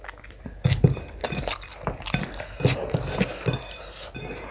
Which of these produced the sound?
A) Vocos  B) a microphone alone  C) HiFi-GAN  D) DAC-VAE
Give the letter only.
B